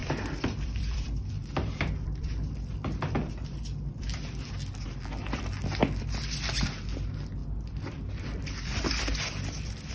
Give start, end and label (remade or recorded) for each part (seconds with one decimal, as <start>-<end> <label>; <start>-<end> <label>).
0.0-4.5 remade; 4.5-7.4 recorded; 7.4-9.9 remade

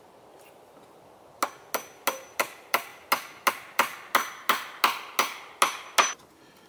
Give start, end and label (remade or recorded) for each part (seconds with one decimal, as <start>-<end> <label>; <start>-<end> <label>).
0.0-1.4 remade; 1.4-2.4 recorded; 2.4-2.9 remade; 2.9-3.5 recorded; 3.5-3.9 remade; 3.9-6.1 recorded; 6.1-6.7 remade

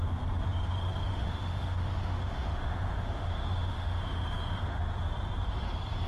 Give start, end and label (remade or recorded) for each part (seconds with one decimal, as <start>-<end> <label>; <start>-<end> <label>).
0.0-1.1 recorded; 1.1-4.8 remade; 4.8-6.1 recorded